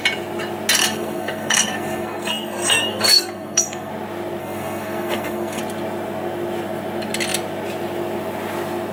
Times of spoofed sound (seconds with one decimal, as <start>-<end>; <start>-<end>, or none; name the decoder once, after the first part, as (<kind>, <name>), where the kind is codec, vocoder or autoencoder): 0.8-3.9 (codec, SNAC); 4.4-5.6